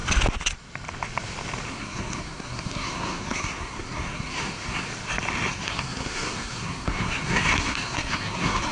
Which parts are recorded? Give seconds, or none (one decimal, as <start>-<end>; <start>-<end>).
0.0-1.7; 4.9-5.5